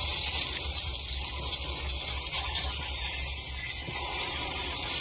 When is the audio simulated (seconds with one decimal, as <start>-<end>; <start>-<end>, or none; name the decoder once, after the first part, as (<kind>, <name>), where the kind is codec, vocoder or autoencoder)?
0.0-0.9 (vocoder, BigVGAN v2); 3.9-5.0